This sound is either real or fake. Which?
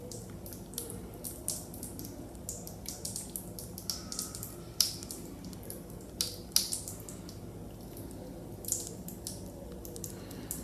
real